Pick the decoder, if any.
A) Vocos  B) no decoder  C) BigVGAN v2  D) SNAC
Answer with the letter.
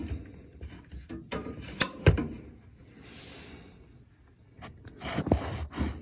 B